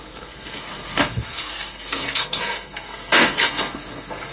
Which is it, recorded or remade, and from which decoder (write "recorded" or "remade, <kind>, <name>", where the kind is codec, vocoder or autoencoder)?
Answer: remade, codec, SNAC